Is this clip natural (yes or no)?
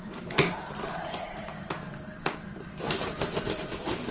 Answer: no